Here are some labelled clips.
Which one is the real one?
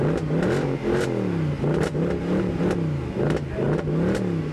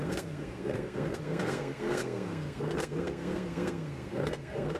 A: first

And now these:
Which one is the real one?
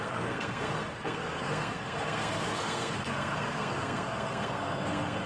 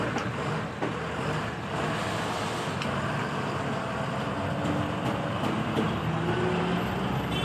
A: second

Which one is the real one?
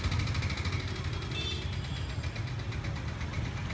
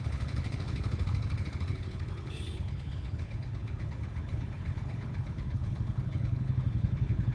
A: first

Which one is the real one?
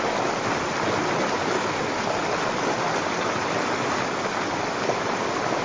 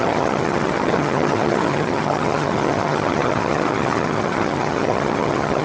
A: first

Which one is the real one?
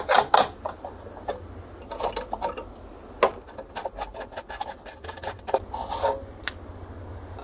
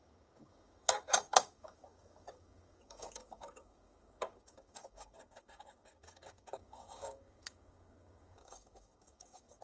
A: first